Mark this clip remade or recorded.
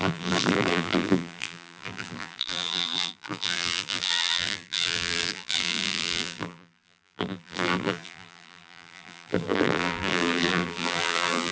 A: remade